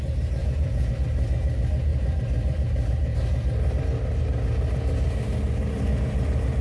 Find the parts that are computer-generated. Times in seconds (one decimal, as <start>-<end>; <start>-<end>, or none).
0.4-0.9